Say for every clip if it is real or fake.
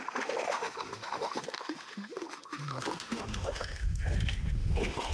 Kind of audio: fake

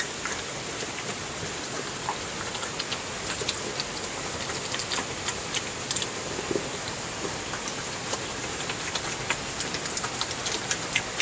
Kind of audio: real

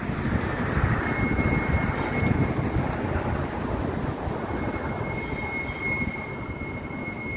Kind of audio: real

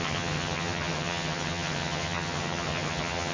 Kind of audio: fake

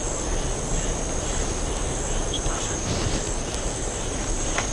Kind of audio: fake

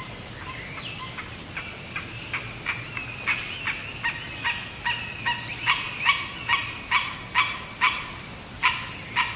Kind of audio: real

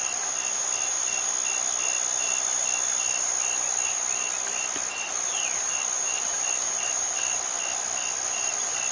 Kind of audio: real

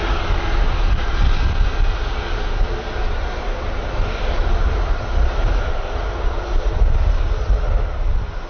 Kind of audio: real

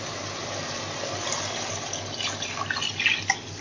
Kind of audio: real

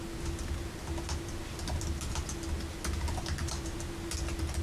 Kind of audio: real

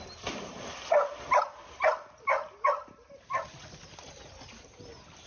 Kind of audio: real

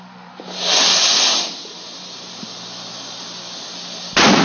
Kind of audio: real